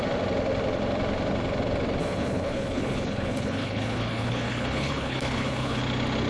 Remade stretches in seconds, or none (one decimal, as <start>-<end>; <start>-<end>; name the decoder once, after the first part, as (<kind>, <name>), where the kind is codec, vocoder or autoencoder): 2.0-5.8 (codec, HILCodec)